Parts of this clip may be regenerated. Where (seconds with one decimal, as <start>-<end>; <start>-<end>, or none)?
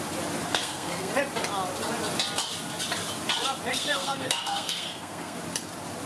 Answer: 0.5-1.1; 3.7-5.4